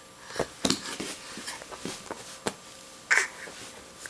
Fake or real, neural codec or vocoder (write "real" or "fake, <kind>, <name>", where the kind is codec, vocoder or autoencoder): real